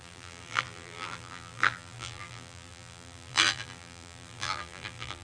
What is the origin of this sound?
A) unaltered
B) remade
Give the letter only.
B